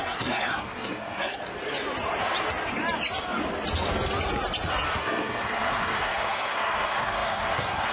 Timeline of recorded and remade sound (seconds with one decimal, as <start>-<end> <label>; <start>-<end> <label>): 0.0-1.4 remade; 1.4-5.0 recorded; 5.0-7.9 remade